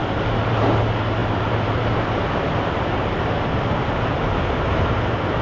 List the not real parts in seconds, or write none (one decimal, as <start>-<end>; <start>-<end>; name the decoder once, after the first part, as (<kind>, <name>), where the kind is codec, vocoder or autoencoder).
0.0-0.6 (vocoder, BigVGAN v2); 1.2-3.5